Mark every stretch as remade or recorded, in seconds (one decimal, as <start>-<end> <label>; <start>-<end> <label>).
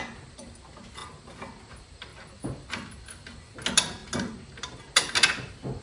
0.0-5.8 recorded